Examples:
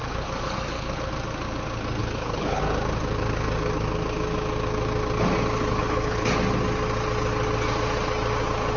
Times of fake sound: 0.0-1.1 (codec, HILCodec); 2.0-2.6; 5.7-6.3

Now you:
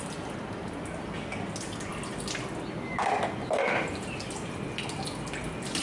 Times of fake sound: none

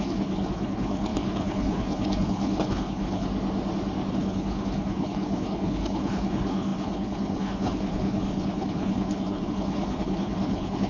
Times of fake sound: 0.0-3.3 (codec, HILCodec); 4.1-10.9